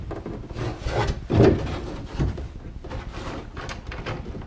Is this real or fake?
real